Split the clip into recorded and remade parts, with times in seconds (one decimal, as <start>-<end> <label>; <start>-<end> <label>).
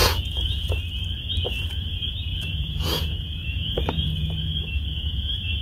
0.0-0.7 remade; 0.7-1.9 recorded; 1.9-5.6 remade